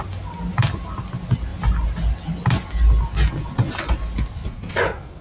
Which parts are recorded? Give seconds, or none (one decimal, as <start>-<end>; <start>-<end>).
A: 0.0-5.2